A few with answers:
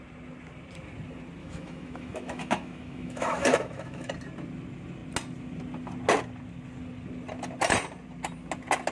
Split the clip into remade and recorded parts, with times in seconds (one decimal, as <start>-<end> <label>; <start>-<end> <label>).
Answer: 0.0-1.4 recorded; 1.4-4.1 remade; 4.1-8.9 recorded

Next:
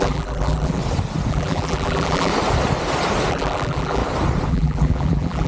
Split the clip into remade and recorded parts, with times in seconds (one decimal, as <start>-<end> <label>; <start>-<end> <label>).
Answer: 0.0-0.8 remade; 0.8-1.3 recorded; 1.3-2.3 remade; 2.3-3.3 recorded; 3.3-4.0 remade; 4.0-4.5 recorded; 4.5-5.5 remade

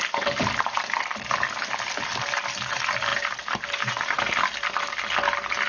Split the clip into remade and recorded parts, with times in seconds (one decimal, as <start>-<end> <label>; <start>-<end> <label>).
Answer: 0.0-5.7 recorded

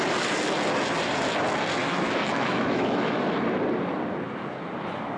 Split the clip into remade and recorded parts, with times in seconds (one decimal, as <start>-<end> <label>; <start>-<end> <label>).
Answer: 0.0-1.8 recorded; 1.8-3.2 remade; 3.2-5.2 recorded

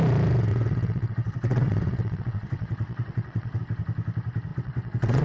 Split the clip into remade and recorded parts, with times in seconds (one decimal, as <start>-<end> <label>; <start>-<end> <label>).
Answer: 0.0-0.5 recorded; 0.5-3.6 remade; 3.6-4.5 recorded; 4.5-5.2 remade

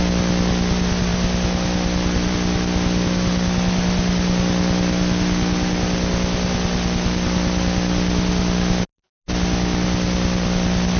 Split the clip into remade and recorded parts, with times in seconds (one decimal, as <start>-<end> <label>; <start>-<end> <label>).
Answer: 0.0-11.0 recorded

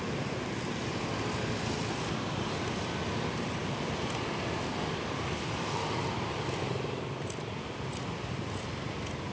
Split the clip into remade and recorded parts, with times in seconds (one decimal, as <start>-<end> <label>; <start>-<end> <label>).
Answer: 0.0-9.3 recorded

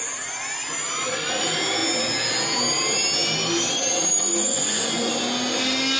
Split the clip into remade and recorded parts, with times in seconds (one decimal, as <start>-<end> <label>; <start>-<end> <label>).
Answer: 0.0-4.5 recorded; 4.5-5.1 remade; 5.1-6.0 recorded